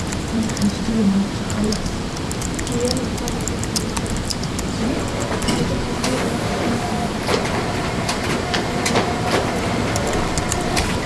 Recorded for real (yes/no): no